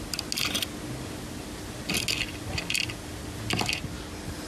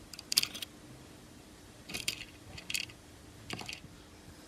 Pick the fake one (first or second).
second